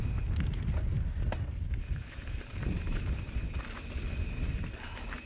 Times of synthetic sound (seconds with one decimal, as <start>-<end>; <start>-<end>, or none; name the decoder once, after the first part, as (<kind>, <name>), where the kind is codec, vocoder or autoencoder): 0.9-4.1 (vocoder, BigVGAN v2)